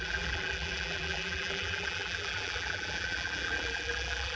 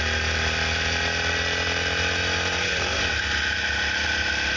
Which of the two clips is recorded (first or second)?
second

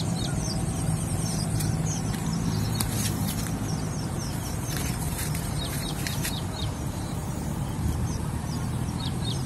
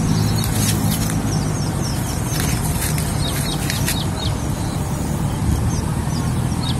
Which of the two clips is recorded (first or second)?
second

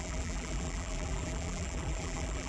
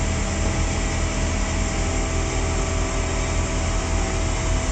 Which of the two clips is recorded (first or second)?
second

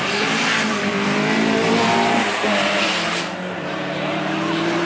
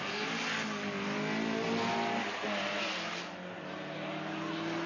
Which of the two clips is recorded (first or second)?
second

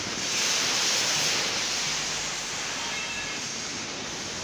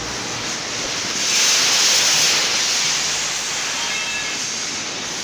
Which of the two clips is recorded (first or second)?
second